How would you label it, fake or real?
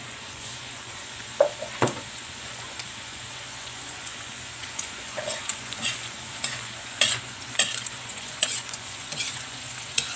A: fake